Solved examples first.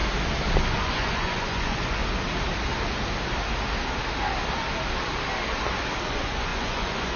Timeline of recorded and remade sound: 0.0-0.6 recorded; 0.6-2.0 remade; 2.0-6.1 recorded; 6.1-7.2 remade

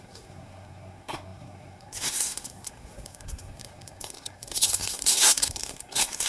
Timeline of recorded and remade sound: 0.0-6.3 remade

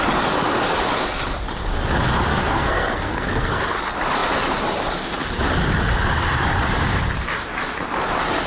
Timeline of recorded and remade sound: 0.0-2.3 recorded; 2.3-3.6 remade; 3.6-8.5 recorded

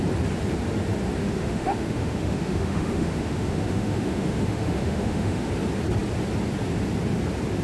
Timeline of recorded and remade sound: 0.0-1.2 recorded; 1.2-5.5 remade; 5.5-7.6 recorded

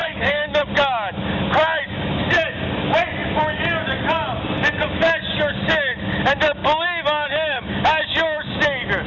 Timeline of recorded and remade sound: 0.0-0.7 remade; 0.7-9.1 recorded